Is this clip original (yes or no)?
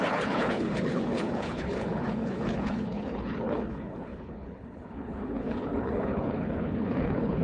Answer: no